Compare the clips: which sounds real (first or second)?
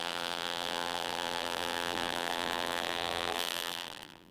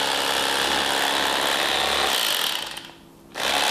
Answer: second